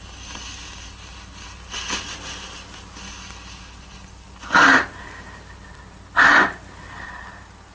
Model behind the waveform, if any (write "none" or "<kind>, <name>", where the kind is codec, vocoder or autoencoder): none